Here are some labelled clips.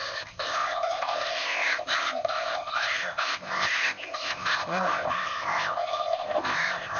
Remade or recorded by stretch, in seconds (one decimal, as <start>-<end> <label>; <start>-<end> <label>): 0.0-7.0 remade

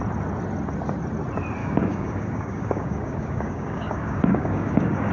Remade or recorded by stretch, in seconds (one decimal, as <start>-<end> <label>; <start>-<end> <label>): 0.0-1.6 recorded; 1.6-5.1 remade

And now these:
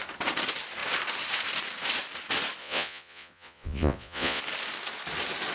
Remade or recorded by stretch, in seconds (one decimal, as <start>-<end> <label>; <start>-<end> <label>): 0.0-2.6 recorded; 2.6-4.4 remade; 4.4-5.5 recorded

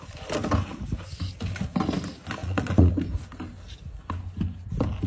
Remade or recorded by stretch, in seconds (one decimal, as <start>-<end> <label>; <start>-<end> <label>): 0.0-2.4 recorded; 2.4-2.9 remade; 2.9-5.1 recorded